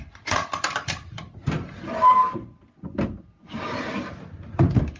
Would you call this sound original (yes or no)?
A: yes